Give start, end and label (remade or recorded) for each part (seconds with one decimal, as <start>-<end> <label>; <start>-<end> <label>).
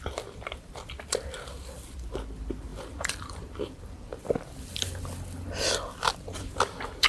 0.0-7.1 remade